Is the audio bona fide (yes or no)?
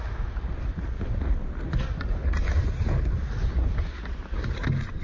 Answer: yes